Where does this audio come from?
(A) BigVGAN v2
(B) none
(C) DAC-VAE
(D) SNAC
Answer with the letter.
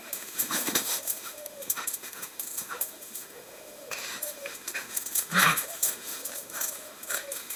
C